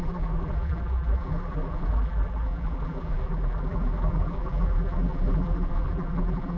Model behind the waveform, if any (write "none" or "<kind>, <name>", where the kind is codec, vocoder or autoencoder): vocoder, BigVGAN v2